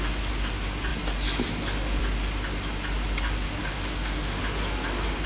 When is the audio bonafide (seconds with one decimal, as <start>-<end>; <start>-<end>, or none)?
0.0-3.6; 4.4-5.3